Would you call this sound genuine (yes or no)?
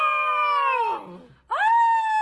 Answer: yes